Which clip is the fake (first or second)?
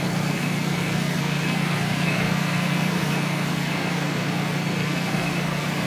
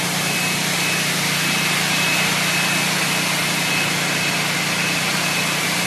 first